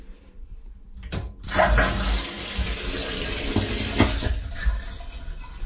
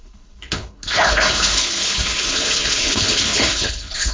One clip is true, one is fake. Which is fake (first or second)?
second